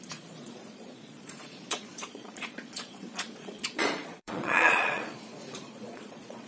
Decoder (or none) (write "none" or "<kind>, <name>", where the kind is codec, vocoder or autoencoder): vocoder, Vocos